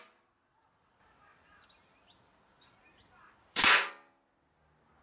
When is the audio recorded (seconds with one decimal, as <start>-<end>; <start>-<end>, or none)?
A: 0.0-1.3; 3.9-5.0